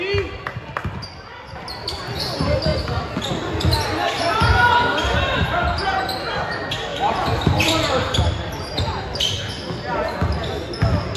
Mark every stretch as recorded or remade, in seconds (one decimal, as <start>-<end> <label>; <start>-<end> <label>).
0.0-6.9 recorded; 6.9-9.4 remade; 9.4-11.2 recorded